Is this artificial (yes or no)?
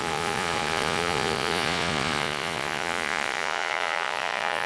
yes